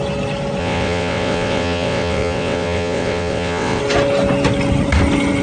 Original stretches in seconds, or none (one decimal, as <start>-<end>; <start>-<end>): 0.0-0.6; 3.8-5.4